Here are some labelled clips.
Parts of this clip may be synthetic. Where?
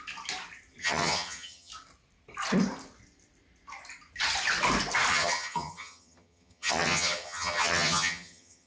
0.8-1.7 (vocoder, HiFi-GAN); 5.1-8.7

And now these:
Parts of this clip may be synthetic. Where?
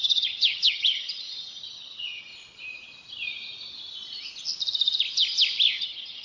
0.0-2.3 (vocoder, HiFi-GAN); 5.8-6.2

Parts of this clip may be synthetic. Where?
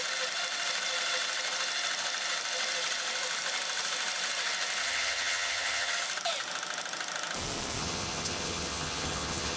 4.8-5.9 (vocoder, HiFi-GAN); 7.8-9.6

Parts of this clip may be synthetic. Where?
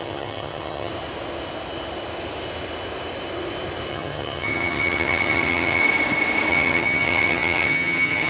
0.0-0.9 (vocoder, HiFi-GAN); 3.9-5.8; 6.5-8.3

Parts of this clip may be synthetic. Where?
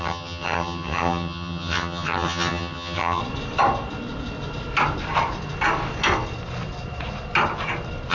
0.0-3.2 (vocoder, HiFi-GAN)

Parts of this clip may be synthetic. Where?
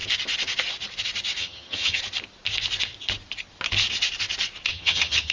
1.4-2.0 (vocoder, HiFi-GAN); 4.7-5.3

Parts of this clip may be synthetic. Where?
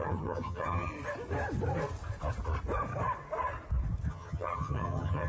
0.0-0.9 (vocoder, HiFi-GAN); 4.1-5.3